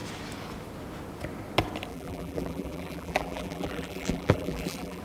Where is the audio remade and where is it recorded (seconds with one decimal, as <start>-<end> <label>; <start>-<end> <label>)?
0.0-1.9 recorded; 1.9-5.0 remade